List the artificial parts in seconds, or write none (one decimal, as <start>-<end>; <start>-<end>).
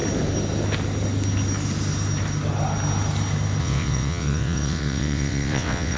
3.6-6.0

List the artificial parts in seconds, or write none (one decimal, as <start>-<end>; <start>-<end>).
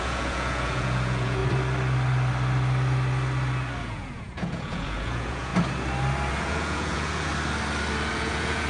0.0-1.4; 3.8-5.5; 6.3-7.3; 8.1-8.7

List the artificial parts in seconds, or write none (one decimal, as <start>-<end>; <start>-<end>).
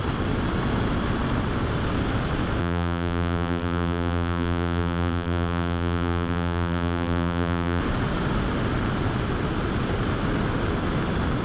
2.6-7.8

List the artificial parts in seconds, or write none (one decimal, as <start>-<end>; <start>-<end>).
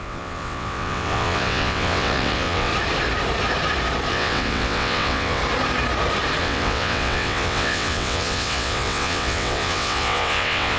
0.0-2.7; 4.1-5.4; 6.4-10.8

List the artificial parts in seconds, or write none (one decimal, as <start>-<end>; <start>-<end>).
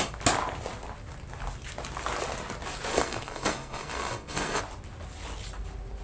2.9-4.6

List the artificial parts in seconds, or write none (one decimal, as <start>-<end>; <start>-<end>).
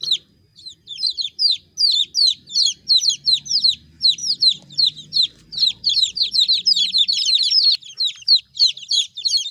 0.5-1.4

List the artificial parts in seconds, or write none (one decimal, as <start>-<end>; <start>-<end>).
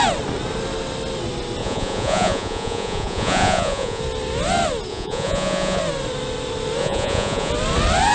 1.6-4.0; 4.9-5.8; 6.8-7.5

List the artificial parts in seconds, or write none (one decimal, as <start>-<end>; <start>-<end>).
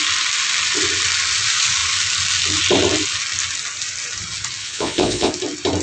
4.6-5.3